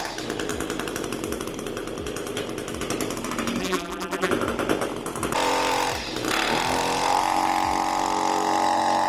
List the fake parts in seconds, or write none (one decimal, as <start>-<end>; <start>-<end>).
3.6-4.3